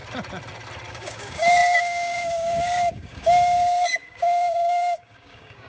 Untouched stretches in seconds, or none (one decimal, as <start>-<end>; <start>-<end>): 0.0-0.9